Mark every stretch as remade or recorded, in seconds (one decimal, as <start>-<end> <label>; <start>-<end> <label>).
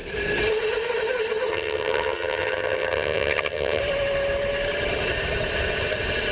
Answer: 0.0-1.5 recorded; 1.5-3.8 remade; 3.8-6.3 recorded